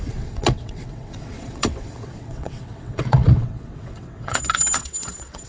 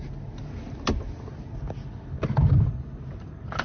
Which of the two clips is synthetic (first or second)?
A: first